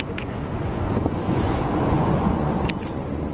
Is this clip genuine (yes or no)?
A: no